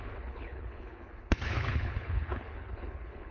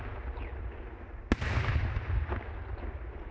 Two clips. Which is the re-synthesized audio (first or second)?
first